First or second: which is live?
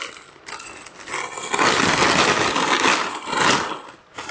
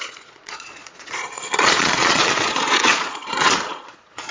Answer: first